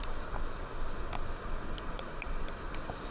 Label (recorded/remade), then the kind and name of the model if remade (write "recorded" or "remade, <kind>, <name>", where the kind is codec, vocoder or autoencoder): recorded